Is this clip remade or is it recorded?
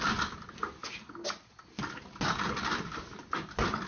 recorded